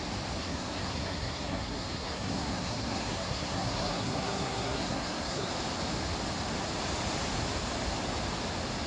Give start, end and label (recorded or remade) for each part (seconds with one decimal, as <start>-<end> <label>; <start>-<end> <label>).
0.0-0.4 recorded; 0.4-5.5 remade; 5.5-8.9 recorded